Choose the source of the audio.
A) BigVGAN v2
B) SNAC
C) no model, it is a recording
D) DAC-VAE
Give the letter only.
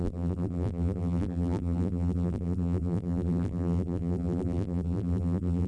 A